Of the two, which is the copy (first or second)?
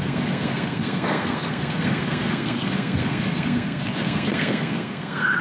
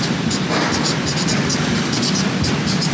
first